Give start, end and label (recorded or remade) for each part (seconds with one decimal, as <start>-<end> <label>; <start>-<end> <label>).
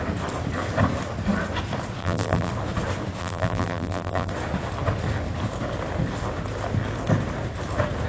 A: 0.0-2.0 recorded; 2.0-2.5 remade; 2.5-3.2 recorded; 3.2-4.3 remade; 4.3-8.1 recorded